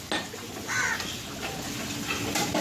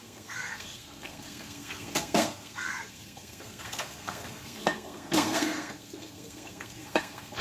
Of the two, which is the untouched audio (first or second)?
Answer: first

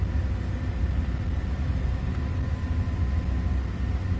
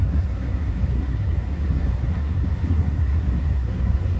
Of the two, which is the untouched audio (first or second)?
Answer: first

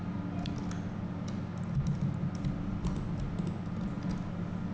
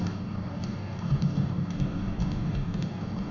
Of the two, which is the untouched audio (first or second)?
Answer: first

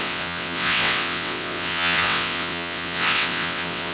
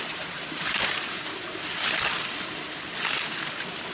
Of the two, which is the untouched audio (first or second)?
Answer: second